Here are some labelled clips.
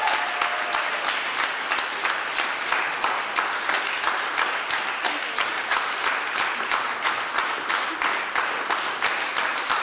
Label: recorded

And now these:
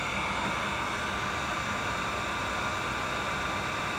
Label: recorded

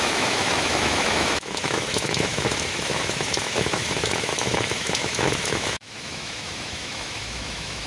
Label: remade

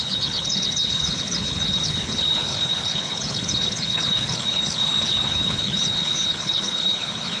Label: remade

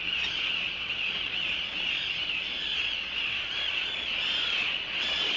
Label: remade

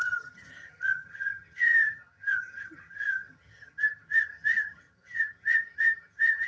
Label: remade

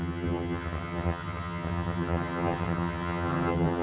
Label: remade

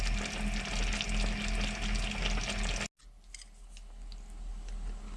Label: recorded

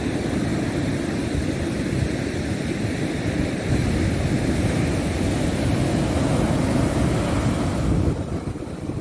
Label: recorded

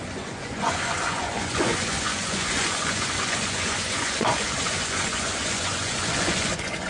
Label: remade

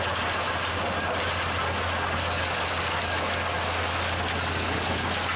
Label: recorded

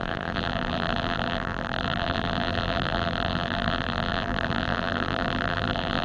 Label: remade